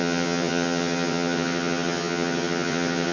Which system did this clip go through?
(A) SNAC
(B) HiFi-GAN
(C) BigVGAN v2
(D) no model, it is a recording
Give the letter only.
B